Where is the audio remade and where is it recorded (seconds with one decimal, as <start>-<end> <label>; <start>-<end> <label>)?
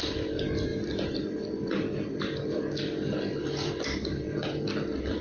0.0-5.2 recorded